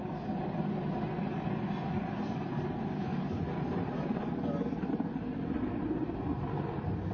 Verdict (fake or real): real